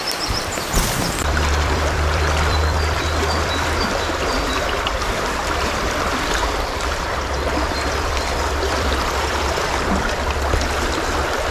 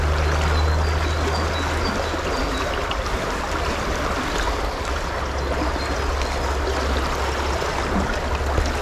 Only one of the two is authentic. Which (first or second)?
second